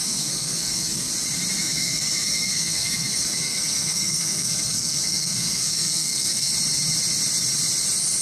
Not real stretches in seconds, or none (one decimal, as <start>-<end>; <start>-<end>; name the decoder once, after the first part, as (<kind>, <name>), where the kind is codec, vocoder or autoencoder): 0.0-1.1 (codec, SNAC); 1.6-6.5